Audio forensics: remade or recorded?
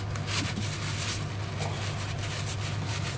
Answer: recorded